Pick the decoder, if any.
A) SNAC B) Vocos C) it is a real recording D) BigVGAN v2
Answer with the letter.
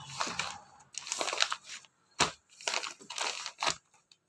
C